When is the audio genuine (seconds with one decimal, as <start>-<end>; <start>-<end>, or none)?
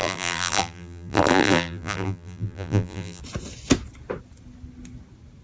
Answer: 3.2-5.4